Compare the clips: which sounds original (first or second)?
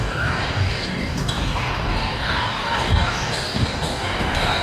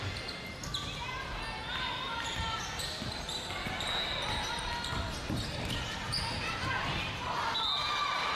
second